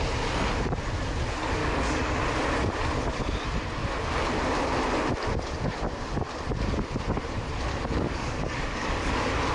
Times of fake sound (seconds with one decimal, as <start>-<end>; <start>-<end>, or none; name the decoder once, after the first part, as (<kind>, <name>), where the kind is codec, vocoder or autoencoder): 1.6-2.2 (codec, DAC); 7.7-9.5